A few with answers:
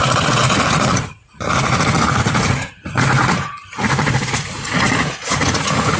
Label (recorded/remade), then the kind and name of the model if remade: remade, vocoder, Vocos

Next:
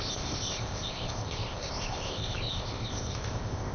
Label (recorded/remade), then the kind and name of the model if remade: remade, codec, ZipCodec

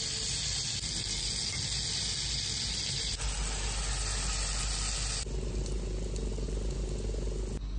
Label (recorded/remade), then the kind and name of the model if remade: recorded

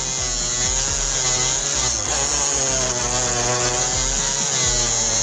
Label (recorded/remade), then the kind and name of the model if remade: recorded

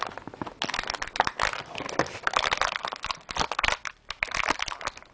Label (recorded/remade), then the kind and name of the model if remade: recorded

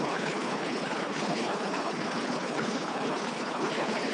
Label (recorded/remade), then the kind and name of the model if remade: remade, codec, HILCodec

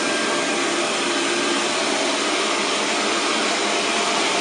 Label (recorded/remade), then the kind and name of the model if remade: recorded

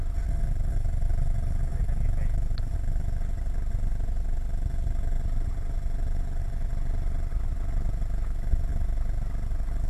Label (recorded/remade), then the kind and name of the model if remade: recorded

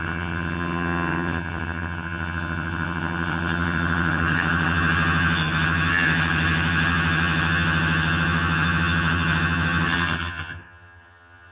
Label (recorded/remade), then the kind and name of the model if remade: remade, vocoder, HiFi-GAN